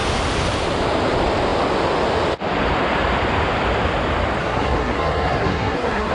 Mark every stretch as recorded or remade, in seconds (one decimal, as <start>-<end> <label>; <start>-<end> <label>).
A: 0.0-4.4 recorded; 4.4-6.1 remade